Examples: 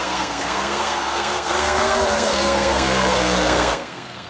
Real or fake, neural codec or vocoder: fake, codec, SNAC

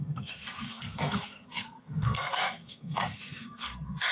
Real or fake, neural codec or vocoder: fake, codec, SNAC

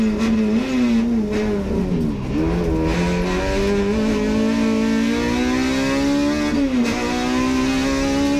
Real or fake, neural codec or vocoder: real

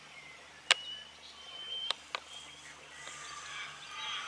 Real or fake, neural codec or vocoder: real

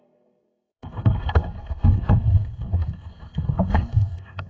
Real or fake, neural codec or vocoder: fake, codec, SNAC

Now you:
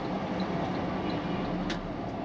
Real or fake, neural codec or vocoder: real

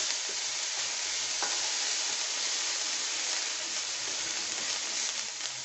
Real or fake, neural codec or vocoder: real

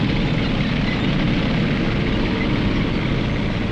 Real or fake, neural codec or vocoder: real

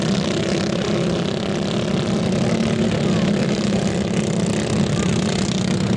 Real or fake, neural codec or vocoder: real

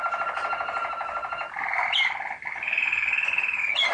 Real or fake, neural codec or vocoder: real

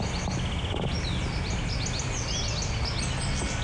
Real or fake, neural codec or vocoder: real